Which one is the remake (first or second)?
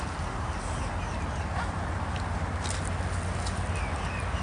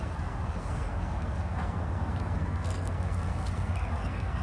second